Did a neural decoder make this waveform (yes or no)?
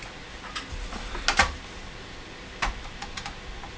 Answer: no